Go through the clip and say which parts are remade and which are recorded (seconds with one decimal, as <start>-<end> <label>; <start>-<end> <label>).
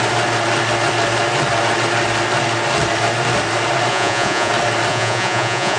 0.0-3.9 recorded; 3.9-4.5 remade; 4.5-4.9 recorded; 4.9-5.8 remade